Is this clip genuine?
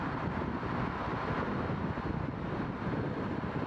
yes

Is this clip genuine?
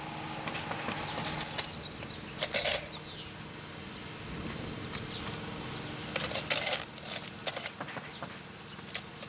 yes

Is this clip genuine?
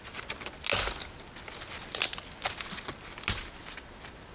yes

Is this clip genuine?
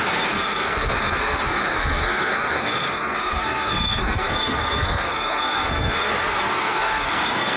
no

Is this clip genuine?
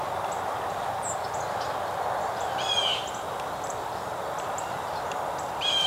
yes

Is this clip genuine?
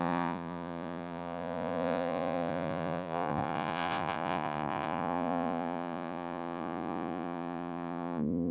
no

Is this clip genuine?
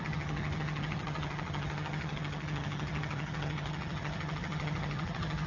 no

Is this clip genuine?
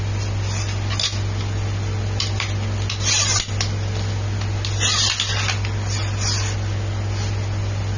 yes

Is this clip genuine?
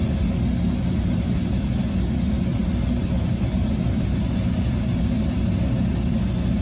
yes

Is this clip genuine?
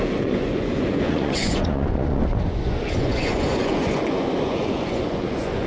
no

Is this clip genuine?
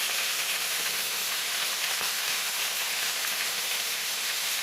no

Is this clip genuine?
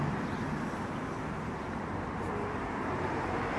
yes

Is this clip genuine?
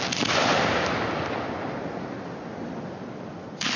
yes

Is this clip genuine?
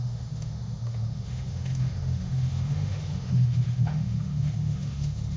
no